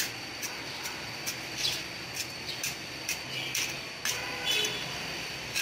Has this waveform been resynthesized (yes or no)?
no